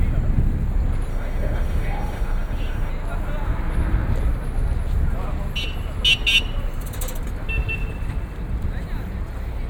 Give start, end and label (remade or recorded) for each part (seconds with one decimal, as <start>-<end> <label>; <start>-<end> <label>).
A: 0.0-1.1 recorded; 1.1-2.9 remade; 2.9-9.7 recorded

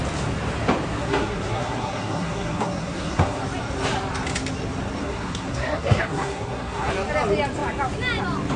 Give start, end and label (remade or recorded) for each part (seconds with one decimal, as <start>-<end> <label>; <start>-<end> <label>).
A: 0.0-1.0 recorded; 1.0-3.4 remade; 3.4-5.0 recorded; 5.0-6.9 remade; 6.9-8.6 recorded

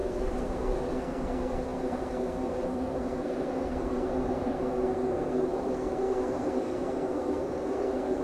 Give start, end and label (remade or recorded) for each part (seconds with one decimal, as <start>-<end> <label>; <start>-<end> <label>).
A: 0.0-8.2 remade